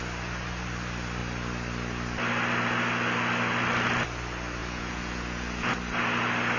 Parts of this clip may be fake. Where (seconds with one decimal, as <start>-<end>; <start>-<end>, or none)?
4.6-5.7